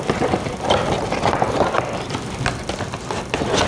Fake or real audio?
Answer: real